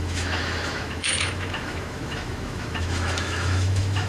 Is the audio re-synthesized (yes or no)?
yes